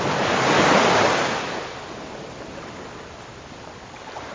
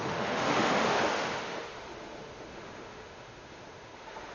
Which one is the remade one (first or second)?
second